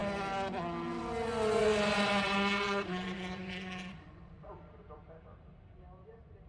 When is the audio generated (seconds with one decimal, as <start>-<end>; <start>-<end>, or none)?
1.6-4.5